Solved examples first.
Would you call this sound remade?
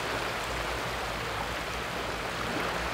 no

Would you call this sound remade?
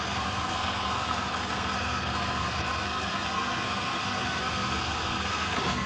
yes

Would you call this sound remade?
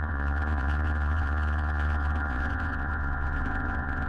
yes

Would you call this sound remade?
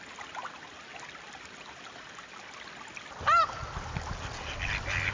no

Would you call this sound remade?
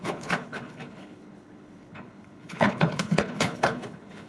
yes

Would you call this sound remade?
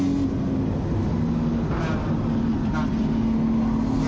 no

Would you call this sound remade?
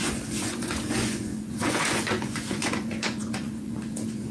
yes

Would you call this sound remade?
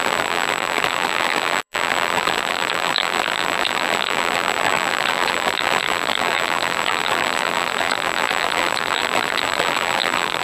yes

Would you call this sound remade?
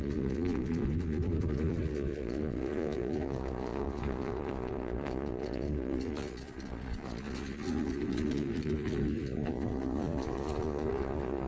yes